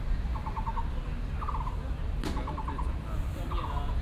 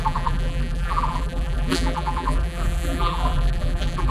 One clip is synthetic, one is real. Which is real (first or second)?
first